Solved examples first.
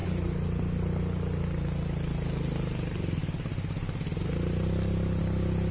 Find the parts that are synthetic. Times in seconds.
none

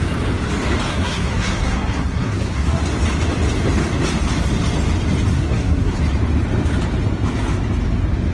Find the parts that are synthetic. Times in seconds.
0.9-2.8 (codec, SNAC); 5.3-6.0

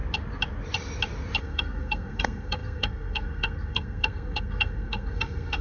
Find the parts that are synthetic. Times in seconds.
1.4-5.6 (codec, SNAC)